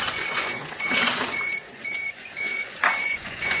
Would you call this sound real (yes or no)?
no